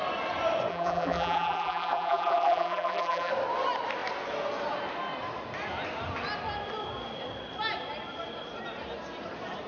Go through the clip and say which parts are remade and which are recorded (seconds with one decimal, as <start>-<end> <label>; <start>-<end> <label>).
0.0-0.7 recorded; 0.7-3.3 remade; 3.3-9.7 recorded